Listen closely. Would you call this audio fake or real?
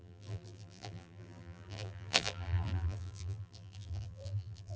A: fake